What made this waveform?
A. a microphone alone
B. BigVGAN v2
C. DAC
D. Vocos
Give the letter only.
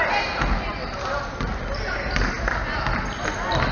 A